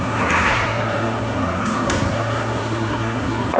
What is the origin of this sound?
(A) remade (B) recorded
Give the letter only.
A